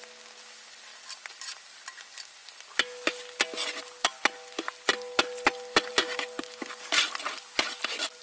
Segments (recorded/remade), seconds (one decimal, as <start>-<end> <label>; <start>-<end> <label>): 0.0-8.2 recorded